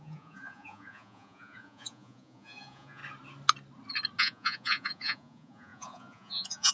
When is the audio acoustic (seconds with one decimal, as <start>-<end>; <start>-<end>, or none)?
3.0-4.2